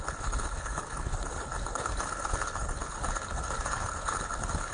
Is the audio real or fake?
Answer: fake